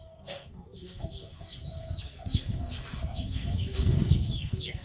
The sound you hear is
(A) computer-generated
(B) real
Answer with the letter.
A